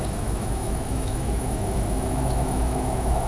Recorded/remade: remade